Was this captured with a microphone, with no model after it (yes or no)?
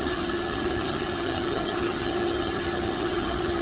no